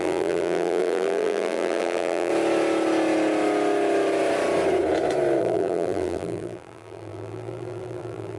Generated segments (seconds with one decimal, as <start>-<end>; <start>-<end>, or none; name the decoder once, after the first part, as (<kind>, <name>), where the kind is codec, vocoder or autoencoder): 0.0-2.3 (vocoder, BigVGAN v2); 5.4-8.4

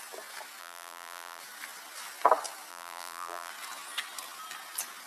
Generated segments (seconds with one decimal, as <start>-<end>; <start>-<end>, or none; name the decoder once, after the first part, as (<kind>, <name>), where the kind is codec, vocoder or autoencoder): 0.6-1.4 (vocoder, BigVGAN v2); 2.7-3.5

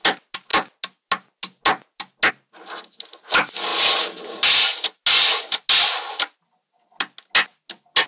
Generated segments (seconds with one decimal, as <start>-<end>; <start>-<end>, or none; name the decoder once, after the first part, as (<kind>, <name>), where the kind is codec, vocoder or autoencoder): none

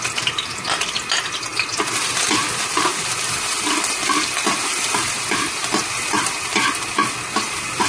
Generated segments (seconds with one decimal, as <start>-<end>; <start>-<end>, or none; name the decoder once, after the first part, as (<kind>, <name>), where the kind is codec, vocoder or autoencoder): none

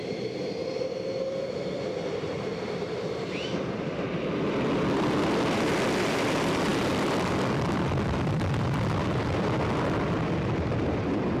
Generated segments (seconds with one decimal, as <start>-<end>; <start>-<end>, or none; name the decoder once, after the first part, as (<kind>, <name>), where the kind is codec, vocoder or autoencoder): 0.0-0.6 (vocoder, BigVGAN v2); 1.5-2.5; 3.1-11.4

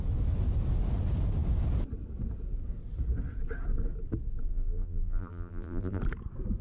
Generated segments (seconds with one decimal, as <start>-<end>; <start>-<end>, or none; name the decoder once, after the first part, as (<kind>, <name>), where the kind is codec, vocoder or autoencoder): 4.5-6.0 (vocoder, BigVGAN v2)

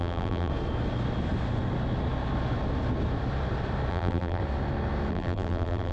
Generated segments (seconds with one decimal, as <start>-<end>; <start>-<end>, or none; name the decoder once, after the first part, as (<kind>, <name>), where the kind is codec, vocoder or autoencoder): 0.0-0.5 (vocoder, BigVGAN v2); 3.9-4.4; 5.1-5.9

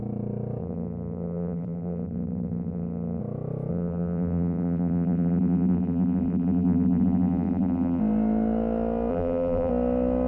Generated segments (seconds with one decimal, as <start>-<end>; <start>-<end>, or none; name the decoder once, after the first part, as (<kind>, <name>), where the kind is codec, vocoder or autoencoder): 0.6-3.2 (vocoder, BigVGAN v2); 3.7-8.0; 9.1-9.7